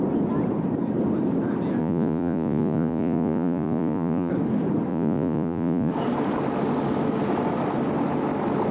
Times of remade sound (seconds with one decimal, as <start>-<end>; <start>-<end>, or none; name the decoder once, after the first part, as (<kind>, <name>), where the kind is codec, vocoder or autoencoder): 1.8-4.3 (vocoder, Vocos); 4.9-5.9